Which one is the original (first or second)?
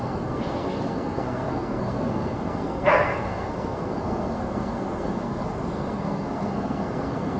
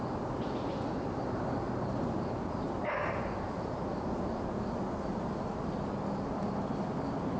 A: second